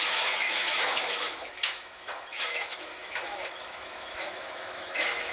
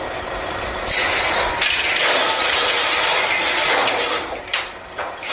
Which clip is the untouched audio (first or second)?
second